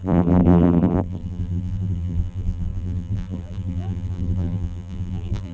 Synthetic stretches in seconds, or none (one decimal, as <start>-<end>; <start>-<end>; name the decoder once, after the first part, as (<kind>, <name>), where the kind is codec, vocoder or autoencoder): 0.0-5.5 (vocoder, BigVGAN v2)